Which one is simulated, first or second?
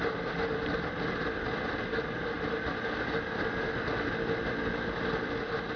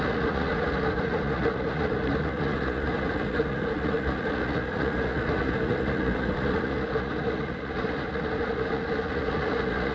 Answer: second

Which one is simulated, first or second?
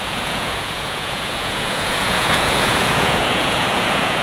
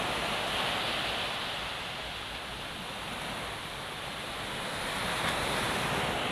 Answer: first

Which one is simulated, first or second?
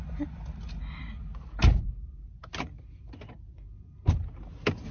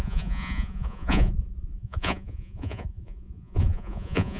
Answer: second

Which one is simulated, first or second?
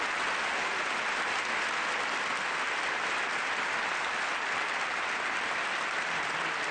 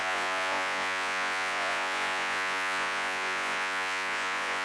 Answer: second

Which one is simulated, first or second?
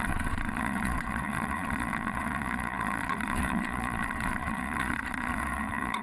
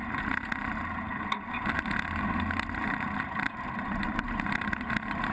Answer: first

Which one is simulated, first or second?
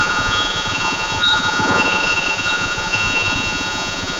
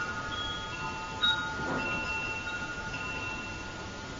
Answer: first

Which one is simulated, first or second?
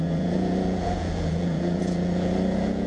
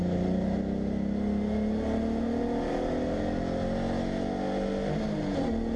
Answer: first